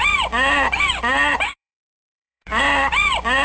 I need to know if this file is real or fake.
fake